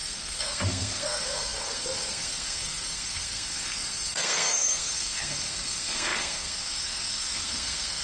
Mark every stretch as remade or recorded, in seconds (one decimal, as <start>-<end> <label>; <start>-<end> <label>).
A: 0.0-8.0 remade